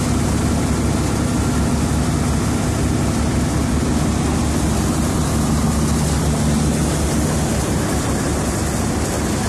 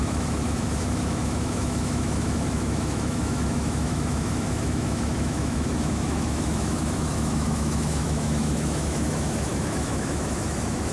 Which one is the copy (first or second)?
second